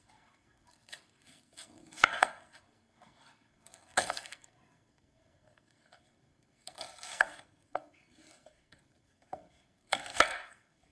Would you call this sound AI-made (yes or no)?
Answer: yes